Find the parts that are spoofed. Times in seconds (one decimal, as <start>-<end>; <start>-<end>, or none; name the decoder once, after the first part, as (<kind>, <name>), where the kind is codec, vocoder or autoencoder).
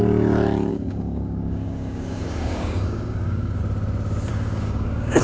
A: 0.7-3.6 (codec, DAC); 4.3-5.2